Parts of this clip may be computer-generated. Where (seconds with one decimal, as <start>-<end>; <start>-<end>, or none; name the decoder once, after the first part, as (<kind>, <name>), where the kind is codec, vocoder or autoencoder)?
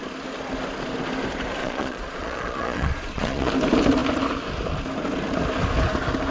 1.6-3.5 (vocoder, Vocos)